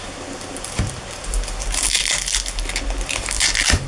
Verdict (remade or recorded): recorded